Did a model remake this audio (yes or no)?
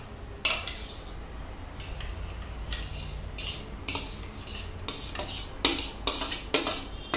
no